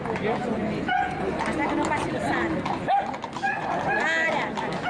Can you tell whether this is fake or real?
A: real